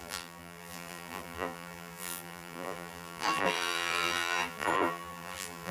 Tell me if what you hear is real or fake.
fake